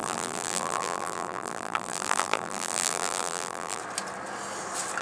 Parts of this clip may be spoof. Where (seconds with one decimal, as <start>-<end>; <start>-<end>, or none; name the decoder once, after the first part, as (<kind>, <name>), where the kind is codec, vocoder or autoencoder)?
0.0-3.8 (vocoder, BigVGAN v2)